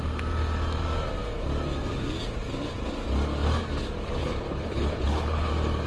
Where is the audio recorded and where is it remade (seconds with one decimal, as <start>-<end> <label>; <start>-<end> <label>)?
0.0-4.2 recorded; 4.2-5.5 remade; 5.5-5.9 recorded